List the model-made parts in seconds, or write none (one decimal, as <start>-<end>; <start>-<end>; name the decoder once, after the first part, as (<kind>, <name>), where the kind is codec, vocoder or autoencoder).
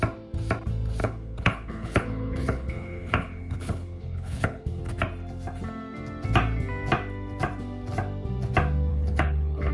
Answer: 1.0-4.8 (codec, HILCodec); 8.9-9.7